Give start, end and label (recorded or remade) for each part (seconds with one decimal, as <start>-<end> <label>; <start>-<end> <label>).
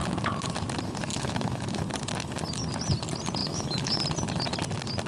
0.0-1.1 recorded; 1.1-1.8 remade; 1.8-3.4 recorded; 3.4-4.0 remade; 4.0-5.1 recorded